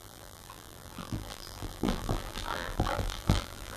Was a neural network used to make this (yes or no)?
yes